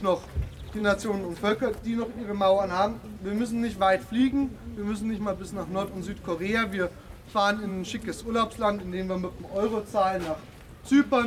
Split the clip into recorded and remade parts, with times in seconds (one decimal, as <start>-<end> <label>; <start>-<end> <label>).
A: 0.0-11.3 recorded